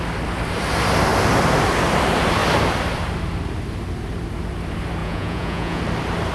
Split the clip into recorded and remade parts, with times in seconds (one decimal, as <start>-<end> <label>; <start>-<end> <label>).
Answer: 0.0-5.0 recorded; 5.0-5.8 remade; 5.8-6.3 recorded